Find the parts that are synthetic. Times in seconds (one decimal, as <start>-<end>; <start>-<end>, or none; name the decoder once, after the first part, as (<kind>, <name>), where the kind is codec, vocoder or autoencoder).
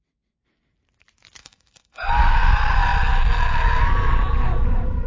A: 1.4-2.1 (codec, SNAC)